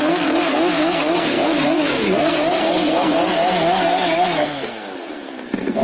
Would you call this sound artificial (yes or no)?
yes